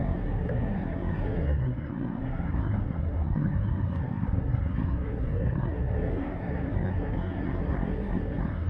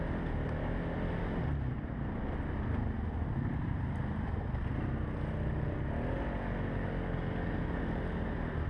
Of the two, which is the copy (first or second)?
first